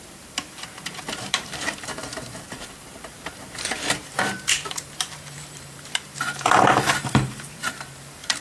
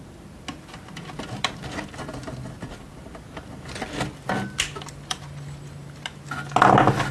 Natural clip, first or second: second